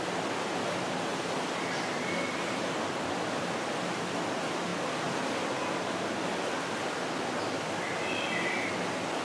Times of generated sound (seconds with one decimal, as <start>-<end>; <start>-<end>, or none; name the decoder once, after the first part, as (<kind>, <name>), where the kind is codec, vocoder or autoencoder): none